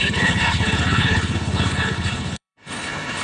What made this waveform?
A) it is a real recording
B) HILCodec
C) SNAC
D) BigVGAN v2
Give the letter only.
B